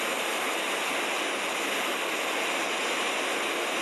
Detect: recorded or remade recorded